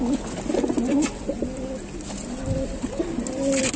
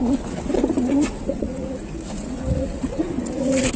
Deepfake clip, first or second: second